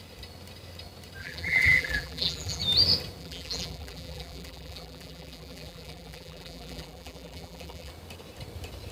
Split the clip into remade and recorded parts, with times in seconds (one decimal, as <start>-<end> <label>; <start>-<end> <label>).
0.0-1.2 recorded; 1.2-2.6 remade; 2.6-3.2 recorded; 3.2-7.9 remade; 7.9-8.9 recorded